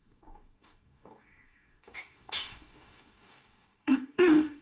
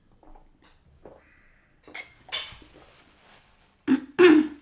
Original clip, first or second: second